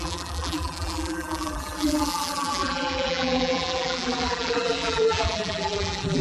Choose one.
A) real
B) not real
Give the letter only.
B